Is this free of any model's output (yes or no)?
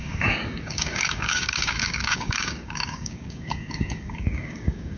no